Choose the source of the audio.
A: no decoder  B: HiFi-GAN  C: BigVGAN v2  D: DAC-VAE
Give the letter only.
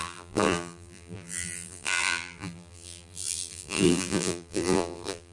C